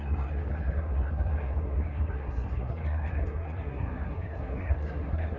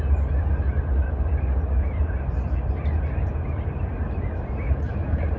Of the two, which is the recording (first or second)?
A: second